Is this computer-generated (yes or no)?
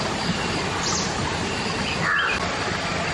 no